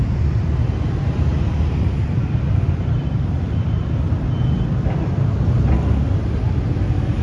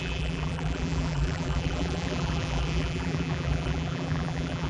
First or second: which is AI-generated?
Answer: second